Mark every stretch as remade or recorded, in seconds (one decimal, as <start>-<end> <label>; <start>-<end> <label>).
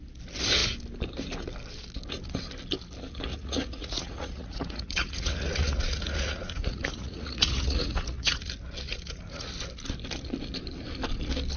0.0-3.3 recorded; 3.3-8.5 remade; 8.5-8.9 recorded; 8.9-9.5 remade; 9.5-11.6 recorded